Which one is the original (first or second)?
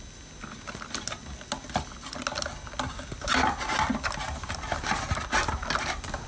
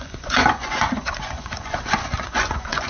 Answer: first